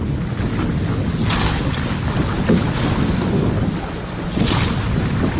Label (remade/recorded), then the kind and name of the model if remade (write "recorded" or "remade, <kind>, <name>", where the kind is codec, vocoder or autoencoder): recorded